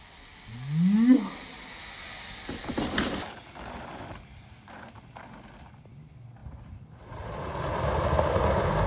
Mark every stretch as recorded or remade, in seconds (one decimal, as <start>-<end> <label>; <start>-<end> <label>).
0.0-8.9 recorded

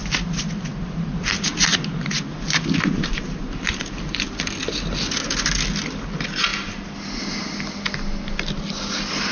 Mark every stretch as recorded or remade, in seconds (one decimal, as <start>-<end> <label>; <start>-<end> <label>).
0.0-9.3 recorded